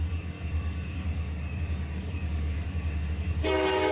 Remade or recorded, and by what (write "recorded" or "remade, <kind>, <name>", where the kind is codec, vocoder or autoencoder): remade, codec, DAC